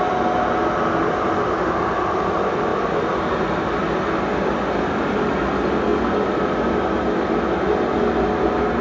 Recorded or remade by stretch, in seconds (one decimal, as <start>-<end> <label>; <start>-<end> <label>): 0.0-8.8 recorded